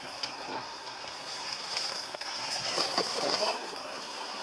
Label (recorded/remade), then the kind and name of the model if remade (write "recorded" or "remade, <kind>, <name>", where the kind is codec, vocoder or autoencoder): remade, codec, SNAC